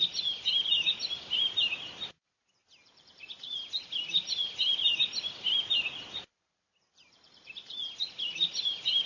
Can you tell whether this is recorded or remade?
remade